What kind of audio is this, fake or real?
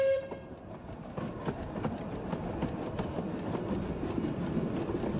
real